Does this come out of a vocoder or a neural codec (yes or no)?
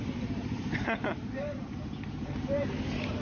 yes